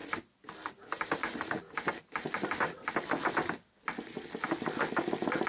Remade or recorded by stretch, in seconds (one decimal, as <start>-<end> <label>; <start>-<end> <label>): 0.0-5.5 recorded